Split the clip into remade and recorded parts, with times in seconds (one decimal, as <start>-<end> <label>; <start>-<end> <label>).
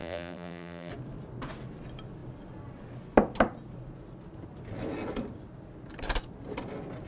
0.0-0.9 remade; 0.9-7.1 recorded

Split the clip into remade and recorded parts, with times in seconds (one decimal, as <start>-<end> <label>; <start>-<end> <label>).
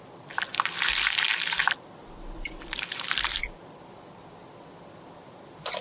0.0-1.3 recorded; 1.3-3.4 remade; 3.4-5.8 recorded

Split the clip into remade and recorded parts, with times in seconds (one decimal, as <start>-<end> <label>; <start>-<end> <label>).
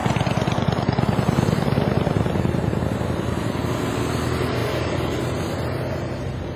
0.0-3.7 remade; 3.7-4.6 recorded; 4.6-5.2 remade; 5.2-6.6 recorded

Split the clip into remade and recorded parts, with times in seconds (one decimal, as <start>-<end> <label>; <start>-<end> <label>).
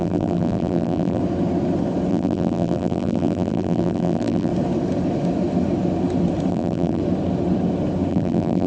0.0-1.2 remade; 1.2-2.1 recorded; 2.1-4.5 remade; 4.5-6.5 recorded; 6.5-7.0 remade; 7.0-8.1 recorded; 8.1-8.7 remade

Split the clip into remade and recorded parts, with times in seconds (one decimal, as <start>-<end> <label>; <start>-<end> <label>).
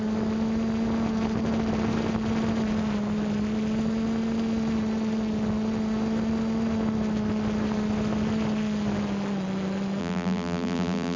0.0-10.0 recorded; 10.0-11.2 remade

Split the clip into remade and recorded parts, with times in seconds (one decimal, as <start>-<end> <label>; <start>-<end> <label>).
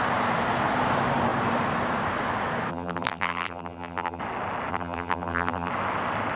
0.0-2.7 recorded; 2.7-4.2 remade; 4.2-4.7 recorded; 4.7-5.7 remade; 5.7-6.4 recorded